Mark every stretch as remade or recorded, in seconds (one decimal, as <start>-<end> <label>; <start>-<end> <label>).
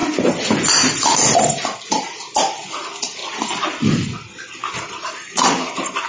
0.0-1.9 recorded; 1.9-3.2 remade; 3.2-4.8 recorded; 4.8-6.1 remade